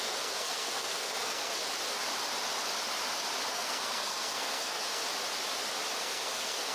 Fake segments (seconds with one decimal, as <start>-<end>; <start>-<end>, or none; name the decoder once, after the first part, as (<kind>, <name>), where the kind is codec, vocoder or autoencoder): 0.0-1.6 (codec, SNAC); 3.5-5.0; 6.0-6.7